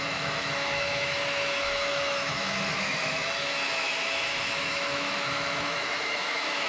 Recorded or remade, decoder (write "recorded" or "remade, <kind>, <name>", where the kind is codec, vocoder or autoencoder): remade, autoencoder, DAC-VAE